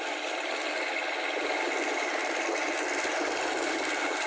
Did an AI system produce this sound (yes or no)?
no